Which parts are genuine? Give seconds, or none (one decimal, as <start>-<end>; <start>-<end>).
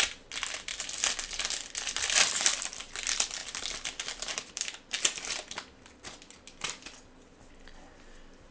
0.0-0.7; 2.8-3.4; 5.0-8.5